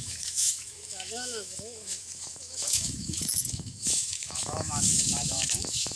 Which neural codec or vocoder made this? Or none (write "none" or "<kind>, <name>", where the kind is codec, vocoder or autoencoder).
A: autoencoder, DAC-VAE